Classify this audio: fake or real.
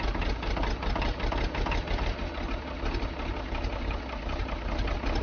real